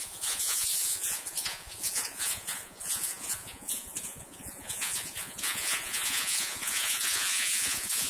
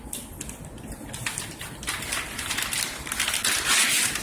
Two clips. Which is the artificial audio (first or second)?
first